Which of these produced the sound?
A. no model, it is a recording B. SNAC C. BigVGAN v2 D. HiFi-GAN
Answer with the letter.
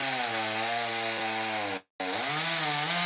A